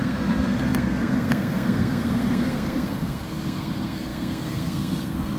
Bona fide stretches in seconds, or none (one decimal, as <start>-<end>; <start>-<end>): none